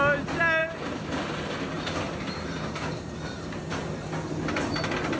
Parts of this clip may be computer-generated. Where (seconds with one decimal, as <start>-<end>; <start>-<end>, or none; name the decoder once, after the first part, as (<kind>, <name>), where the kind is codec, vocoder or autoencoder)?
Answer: 0.6-3.7 (vocoder, BigVGAN v2)